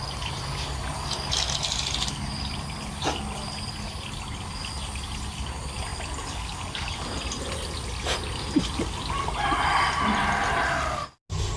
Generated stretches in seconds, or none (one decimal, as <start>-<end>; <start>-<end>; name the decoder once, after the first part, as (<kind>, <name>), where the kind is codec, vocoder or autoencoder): none